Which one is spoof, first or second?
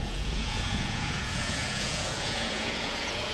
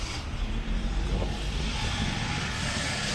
first